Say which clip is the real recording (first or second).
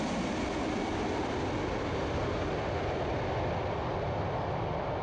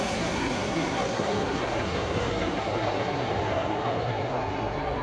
first